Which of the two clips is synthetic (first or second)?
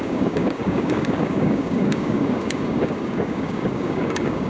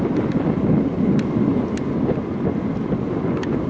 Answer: first